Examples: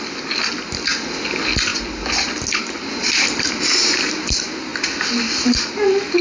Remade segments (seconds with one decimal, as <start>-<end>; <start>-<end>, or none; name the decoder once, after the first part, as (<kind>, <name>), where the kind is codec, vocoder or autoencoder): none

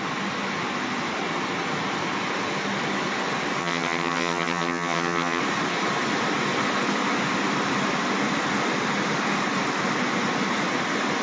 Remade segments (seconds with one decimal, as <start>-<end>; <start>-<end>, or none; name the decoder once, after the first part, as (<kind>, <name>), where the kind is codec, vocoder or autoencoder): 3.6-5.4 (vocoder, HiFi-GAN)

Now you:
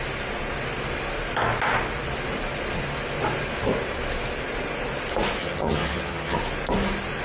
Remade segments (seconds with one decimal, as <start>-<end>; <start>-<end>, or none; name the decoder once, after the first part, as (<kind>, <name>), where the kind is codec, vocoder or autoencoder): 5.4-6.4 (vocoder, HiFi-GAN)

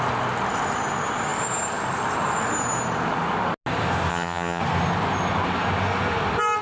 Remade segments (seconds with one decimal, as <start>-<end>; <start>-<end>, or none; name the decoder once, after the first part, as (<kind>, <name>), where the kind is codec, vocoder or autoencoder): 4.1-4.6 (vocoder, HiFi-GAN)

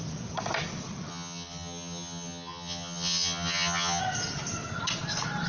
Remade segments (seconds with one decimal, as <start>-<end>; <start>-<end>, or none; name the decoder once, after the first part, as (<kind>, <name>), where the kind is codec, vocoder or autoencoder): 1.1-4.0 (vocoder, HiFi-GAN)

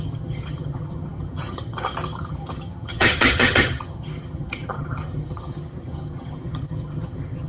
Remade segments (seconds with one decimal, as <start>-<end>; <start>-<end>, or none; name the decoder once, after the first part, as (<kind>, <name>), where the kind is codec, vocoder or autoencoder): 0.0-7.5 (vocoder, HiFi-GAN)

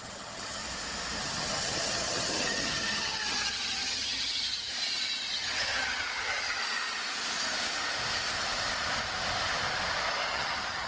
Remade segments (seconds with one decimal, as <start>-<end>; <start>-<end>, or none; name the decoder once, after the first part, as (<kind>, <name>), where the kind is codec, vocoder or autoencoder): 0.0-0.6 (vocoder, HiFi-GAN); 1.2-4.7; 5.3-6.6; 10.3-10.9